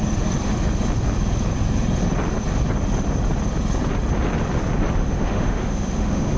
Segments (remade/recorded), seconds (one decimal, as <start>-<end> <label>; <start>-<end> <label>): 0.0-5.0 recorded; 5.0-6.4 remade